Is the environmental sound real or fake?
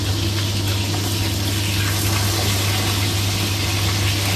real